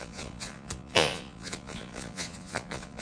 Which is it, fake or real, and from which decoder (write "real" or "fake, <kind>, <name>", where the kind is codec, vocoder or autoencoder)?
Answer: fake, vocoder, Vocos